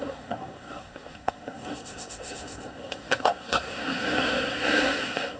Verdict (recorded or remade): remade